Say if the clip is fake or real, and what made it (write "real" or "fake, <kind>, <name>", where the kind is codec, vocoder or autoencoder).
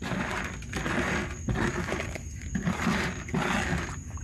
real